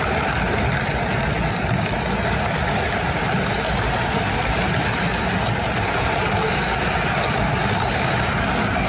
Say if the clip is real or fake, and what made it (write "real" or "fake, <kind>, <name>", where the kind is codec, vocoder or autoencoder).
real